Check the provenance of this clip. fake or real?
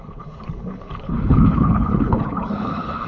fake